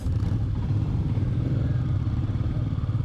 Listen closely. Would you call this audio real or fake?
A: real